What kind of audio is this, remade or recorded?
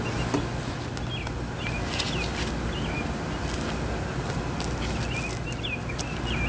recorded